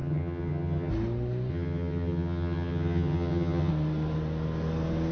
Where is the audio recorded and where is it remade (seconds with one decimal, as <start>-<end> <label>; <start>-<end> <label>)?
0.0-0.9 remade; 0.9-1.5 recorded; 1.5-3.7 remade; 3.7-5.1 recorded